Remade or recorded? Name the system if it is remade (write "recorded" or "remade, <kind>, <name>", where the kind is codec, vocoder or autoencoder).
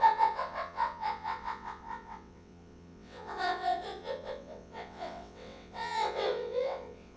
remade, vocoder, WaveNeXt